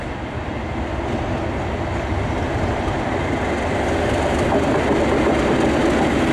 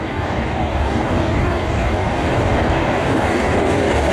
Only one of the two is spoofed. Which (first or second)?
second